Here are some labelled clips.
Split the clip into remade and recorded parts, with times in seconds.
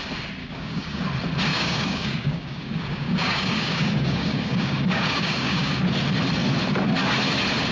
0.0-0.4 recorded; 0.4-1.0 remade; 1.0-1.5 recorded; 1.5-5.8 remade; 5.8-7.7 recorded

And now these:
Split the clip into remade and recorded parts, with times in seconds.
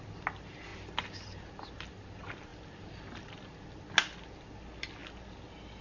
0.0-5.8 recorded